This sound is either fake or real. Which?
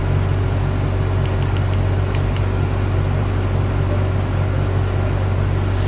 real